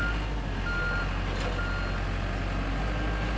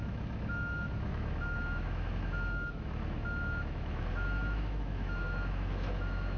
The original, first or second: first